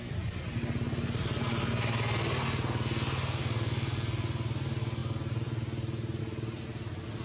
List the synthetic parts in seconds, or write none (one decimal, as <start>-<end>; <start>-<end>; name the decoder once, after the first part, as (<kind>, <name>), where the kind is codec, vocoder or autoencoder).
none